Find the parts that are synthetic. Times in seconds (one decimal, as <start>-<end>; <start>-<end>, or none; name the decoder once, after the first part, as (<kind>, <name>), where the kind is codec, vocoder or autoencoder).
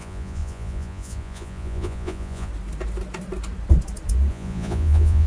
0.0-2.5 (vocoder, Vocos); 4.3-5.3